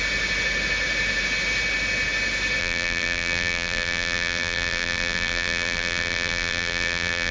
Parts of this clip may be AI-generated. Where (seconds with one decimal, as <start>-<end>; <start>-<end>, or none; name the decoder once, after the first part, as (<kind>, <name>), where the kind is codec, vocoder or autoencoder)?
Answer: 2.6-7.3 (vocoder, BigVGAN v2)